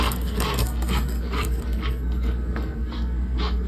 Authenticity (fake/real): fake